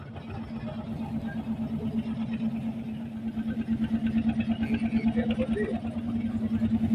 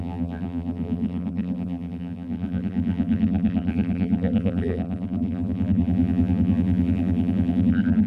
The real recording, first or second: first